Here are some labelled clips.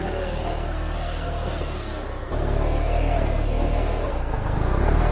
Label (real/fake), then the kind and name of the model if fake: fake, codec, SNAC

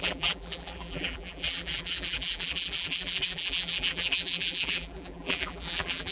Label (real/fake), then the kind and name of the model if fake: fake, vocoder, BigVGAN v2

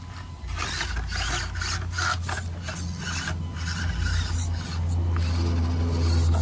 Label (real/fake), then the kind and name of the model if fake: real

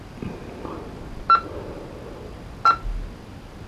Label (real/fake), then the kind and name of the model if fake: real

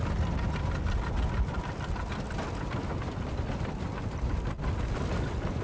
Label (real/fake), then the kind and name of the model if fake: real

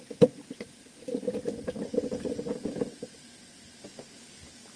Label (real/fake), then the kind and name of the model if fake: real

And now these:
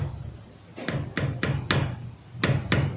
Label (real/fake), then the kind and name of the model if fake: real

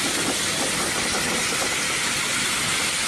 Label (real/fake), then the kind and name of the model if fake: real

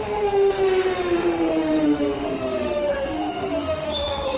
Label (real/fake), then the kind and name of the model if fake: fake, autoencoder, DAC-VAE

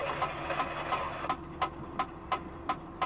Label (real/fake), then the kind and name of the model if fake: real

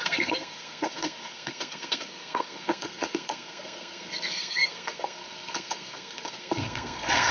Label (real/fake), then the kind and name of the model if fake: fake, codec, SNAC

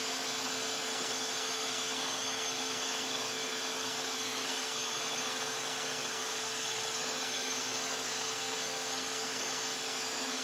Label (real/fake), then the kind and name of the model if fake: fake, codec, SNAC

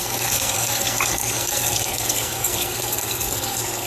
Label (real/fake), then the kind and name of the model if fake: fake, codec, SNAC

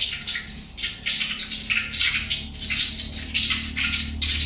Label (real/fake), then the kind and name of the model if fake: real